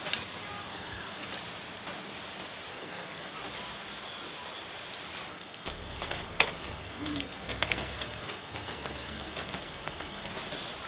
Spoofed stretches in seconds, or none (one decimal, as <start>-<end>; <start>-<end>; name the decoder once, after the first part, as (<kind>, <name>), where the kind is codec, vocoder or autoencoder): 0.7-1.3 (codec, SNAC); 2.7-3.3; 5.3-10.3